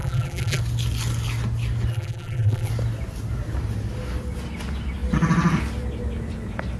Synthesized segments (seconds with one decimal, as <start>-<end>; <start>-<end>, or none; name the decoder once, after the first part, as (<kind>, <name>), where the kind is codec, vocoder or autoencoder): 0.0-0.6 (vocoder, BigVGAN v2); 1.9-2.7